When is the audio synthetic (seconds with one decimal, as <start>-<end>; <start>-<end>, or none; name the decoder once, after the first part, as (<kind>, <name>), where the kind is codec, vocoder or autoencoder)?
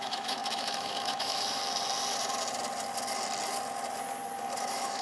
0.0-1.6 (autoencoder, DAC-VAE); 4.6-5.0